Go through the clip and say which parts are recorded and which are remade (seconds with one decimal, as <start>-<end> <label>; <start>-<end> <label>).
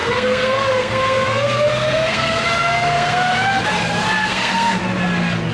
0.0-3.3 remade; 3.3-4.2 recorded; 4.2-4.8 remade; 4.8-5.5 recorded